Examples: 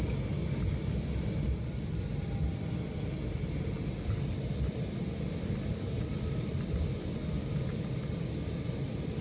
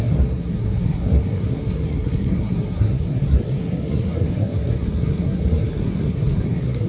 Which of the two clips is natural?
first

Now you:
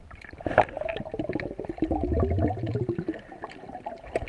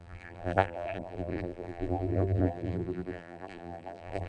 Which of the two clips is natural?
first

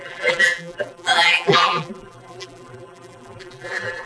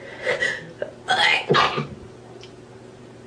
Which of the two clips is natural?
second